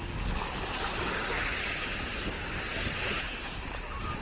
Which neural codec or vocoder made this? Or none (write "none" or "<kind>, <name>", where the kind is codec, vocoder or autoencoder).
none